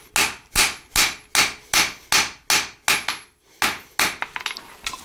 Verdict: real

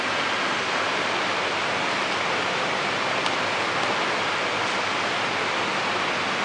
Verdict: real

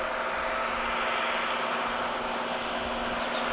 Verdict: real